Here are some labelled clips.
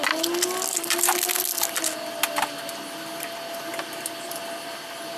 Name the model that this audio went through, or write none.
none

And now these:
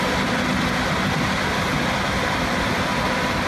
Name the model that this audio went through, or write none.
none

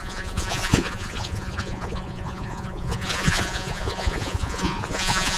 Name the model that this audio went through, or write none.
vocoder, Vocos